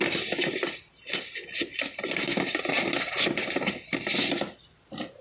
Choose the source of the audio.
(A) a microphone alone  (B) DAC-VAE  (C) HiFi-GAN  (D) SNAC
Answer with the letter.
A